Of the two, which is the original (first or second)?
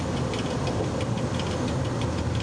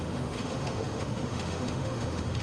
first